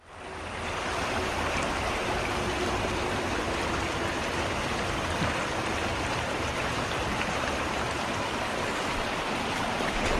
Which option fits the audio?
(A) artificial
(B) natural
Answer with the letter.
B